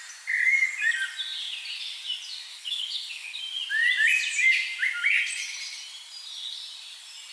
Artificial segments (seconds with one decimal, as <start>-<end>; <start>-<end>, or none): 2.5-3.4